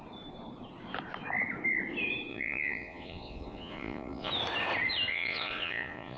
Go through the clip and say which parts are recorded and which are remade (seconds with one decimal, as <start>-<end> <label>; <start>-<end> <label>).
0.0-2.3 recorded; 2.3-4.3 remade; 4.3-5.1 recorded; 5.1-6.2 remade